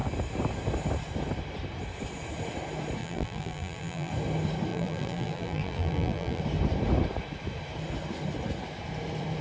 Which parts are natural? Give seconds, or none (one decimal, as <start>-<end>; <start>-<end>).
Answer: 0.0-3.0; 4.1-4.7; 6.4-9.4